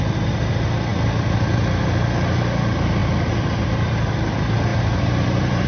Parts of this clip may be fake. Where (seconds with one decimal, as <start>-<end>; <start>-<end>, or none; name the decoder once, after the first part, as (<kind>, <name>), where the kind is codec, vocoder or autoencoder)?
4.7-5.7 (vocoder, BigVGAN v2)